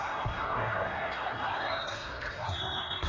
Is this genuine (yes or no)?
no